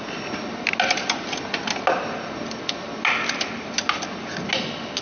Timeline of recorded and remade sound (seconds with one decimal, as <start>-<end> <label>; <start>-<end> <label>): 0.0-5.0 recorded